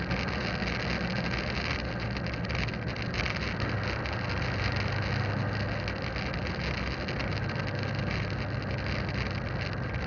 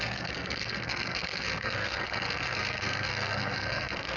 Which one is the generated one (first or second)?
second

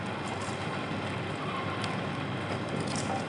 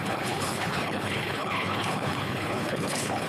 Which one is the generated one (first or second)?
second